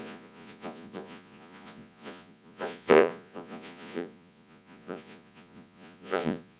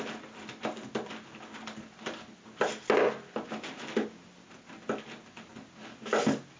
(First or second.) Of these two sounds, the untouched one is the second